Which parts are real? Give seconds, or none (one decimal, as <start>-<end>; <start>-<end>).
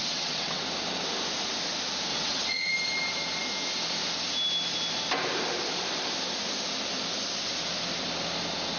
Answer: 0.6-2.1; 2.7-8.8